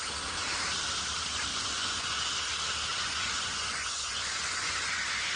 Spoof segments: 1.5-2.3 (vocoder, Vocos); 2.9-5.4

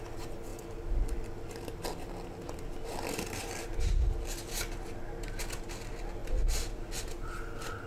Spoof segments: none

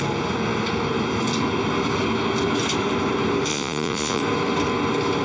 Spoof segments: 3.5-4.2 (vocoder, Vocos)

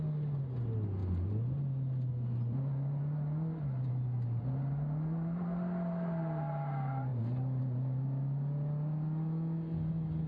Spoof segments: none

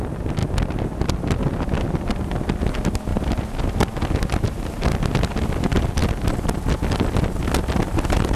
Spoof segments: none

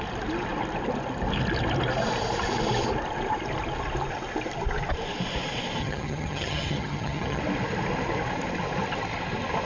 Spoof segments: 5.8-7.4 (vocoder, HiFi-GAN)

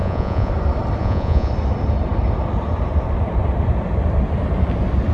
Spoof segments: 0.0-0.5 (vocoder, Vocos); 1.0-1.5

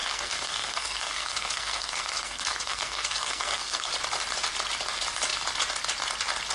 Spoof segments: 0.0-3.9 (codec, SNAC)